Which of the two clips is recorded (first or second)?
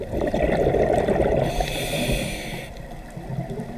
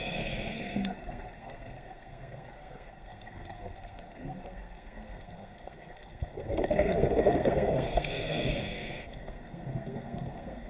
first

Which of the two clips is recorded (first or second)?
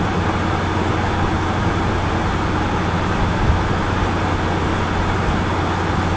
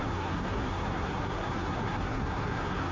first